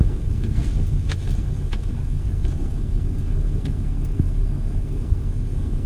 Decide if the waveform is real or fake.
fake